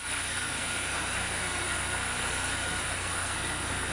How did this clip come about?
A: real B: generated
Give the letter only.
B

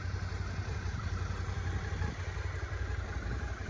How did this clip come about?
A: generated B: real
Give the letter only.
B